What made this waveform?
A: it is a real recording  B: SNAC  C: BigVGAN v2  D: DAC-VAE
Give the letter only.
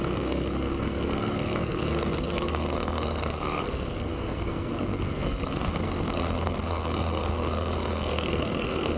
B